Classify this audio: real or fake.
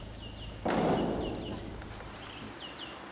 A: real